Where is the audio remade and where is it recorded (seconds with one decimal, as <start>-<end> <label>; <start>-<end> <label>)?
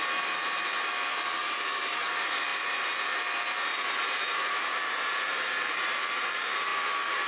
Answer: 0.0-7.3 remade